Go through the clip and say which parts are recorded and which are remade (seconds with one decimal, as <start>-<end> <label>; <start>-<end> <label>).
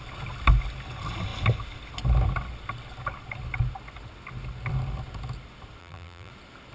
0.0-5.8 recorded; 5.8-6.3 remade; 6.3-6.7 recorded